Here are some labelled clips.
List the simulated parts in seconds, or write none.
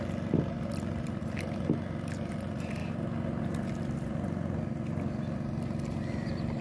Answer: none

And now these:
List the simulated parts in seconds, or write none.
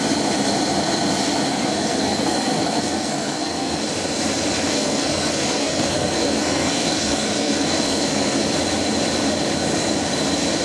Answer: 1.5-3.8 (codec, SNAC); 4.7-8.4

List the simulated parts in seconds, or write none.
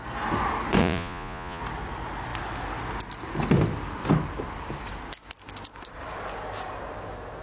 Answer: 0.8-1.6 (vocoder, Vocos)